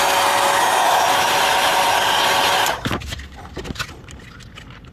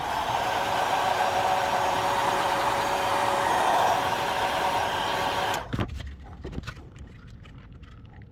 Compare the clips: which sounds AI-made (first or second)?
second